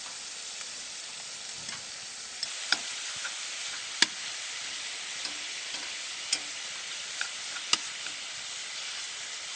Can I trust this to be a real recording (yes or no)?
yes